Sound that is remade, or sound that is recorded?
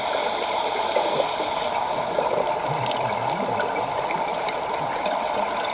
recorded